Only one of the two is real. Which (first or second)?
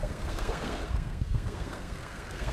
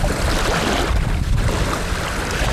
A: second